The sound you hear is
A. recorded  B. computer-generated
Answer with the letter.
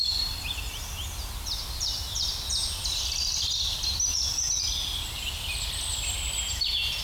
A